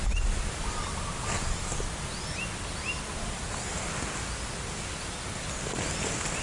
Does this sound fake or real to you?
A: real